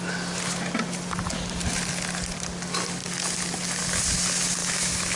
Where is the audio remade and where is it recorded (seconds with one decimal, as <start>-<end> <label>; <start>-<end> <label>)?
0.0-4.6 recorded; 4.6-5.2 remade